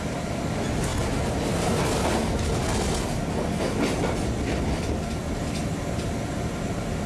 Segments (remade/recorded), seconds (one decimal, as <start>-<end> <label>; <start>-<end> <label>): 0.0-0.9 remade; 0.9-4.7 recorded; 4.7-5.2 remade; 5.2-5.8 recorded; 5.8-7.1 remade